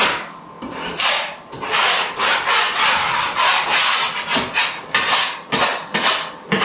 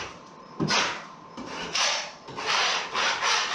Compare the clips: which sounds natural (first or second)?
first